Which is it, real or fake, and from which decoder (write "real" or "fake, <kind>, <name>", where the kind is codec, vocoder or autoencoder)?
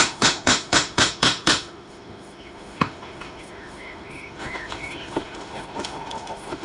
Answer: fake, autoencoder, DAC-VAE